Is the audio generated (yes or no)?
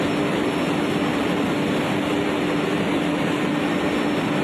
no